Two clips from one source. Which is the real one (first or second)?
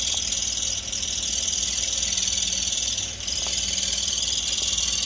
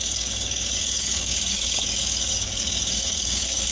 first